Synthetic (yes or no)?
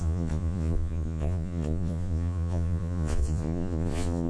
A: yes